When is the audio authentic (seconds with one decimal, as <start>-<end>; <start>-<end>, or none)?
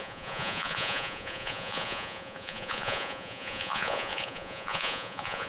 none